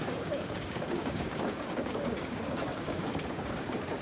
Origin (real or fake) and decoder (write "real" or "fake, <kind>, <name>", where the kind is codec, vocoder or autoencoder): fake, codec, DAC